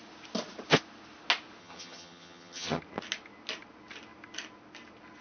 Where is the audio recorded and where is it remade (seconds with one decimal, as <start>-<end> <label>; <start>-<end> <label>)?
0.0-1.6 recorded; 1.6-2.8 remade; 2.8-5.2 recorded